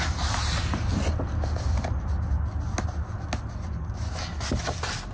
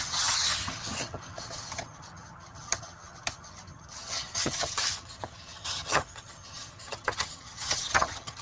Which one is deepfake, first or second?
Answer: second